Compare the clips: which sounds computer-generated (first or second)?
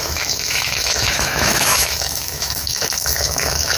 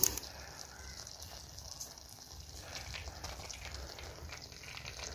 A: first